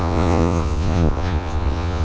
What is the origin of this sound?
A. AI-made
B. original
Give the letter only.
A